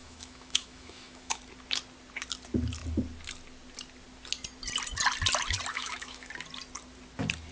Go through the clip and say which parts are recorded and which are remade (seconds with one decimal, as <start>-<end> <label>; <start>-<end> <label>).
0.0-1.4 remade; 1.4-5.7 recorded; 5.7-6.3 remade; 6.3-7.5 recorded